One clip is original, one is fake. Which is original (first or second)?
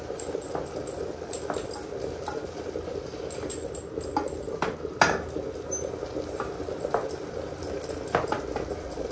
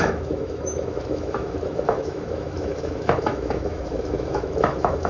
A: first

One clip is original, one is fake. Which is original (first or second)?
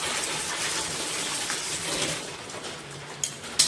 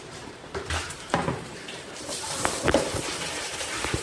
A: first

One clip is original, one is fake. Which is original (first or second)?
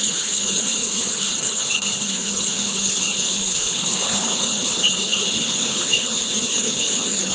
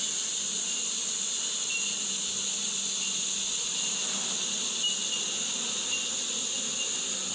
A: second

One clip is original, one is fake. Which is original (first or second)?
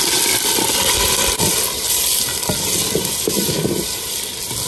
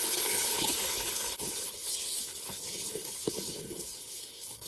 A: first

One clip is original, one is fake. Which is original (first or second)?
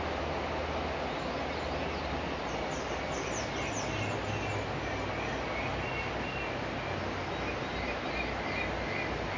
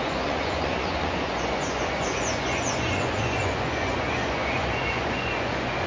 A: first